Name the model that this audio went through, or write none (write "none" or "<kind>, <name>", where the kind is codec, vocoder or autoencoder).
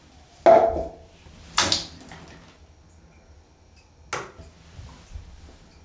none